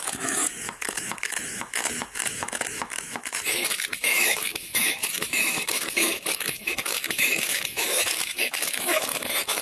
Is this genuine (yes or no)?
no